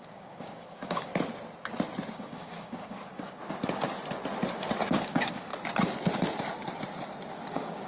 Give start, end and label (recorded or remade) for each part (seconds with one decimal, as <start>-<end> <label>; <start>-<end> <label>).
0.0-1.1 remade; 1.1-2.1 recorded; 2.1-3.4 remade; 3.4-4.9 recorded; 4.9-5.5 remade; 5.5-7.5 recorded; 7.5-7.9 remade